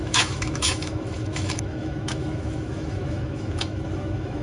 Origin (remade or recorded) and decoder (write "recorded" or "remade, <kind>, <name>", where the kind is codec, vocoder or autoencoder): remade, autoencoder, DAC-VAE